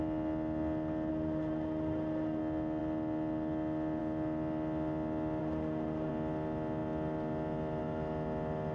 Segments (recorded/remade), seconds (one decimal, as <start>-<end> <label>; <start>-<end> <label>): 0.0-1.1 recorded; 1.1-2.4 remade; 2.4-5.4 recorded; 5.4-6.1 remade; 6.1-8.7 recorded